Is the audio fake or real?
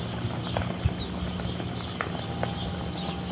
real